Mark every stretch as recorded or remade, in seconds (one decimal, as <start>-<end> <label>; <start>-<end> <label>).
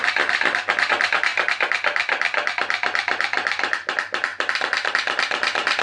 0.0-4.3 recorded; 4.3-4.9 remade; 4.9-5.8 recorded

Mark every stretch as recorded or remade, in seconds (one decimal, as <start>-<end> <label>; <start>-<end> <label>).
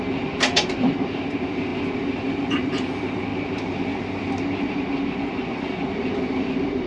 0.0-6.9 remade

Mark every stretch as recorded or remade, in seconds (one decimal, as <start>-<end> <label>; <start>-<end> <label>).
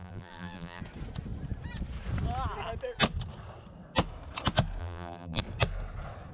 0.0-0.8 remade; 0.8-4.8 recorded; 4.8-5.4 remade; 5.4-6.3 recorded